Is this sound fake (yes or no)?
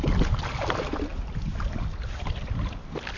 no